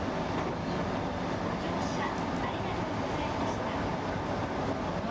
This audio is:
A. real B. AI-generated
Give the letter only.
A